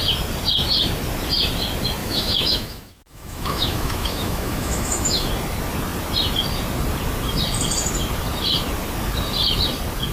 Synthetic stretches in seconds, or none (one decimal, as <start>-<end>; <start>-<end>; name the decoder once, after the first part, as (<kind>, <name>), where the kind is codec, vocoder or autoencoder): 2.0-5.3 (autoencoder, DAC-VAE)

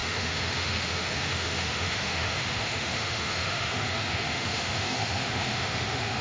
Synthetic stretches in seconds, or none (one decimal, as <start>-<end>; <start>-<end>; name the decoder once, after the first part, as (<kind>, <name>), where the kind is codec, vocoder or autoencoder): 0.0-6.2 (autoencoder, DAC-VAE)

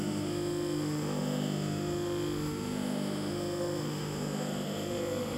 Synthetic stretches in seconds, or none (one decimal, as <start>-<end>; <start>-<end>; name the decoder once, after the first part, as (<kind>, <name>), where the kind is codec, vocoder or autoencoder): 0.0-5.4 (autoencoder, DAC-VAE)

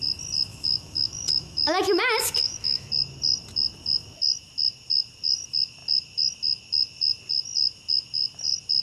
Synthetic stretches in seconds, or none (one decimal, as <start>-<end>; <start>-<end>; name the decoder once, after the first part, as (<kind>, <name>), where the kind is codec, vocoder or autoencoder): 0.5-2.0 (autoencoder, DAC-VAE); 2.4-2.9

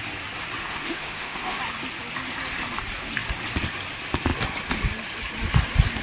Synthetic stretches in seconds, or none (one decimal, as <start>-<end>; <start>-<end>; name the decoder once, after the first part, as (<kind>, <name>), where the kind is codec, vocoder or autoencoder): 0.6-1.6 (autoencoder, DAC-VAE)

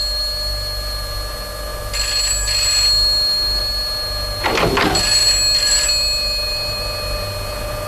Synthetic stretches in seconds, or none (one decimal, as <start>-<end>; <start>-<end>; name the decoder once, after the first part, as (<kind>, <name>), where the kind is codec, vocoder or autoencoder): none